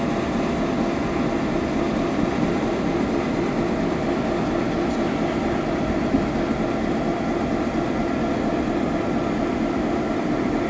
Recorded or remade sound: recorded